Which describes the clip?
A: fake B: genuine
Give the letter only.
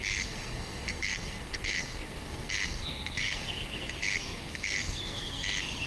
A